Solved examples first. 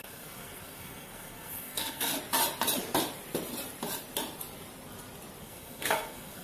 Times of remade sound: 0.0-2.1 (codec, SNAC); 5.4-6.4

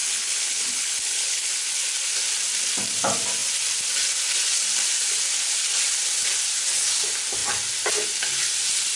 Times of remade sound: 0.0-1.5 (codec, HILCodec)

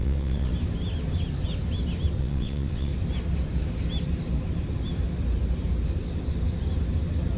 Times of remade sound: 0.0-0.5 (vocoder, WaveNeXt); 2.2-2.9

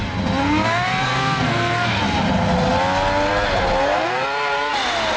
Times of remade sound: 0.4-2.0 (codec, SNAC); 3.8-4.7

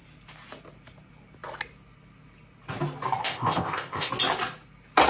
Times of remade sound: 3.2-4.1 (codec, ZipCodec)